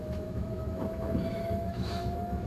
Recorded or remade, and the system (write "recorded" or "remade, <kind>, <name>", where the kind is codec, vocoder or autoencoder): remade, autoencoder, DAC-VAE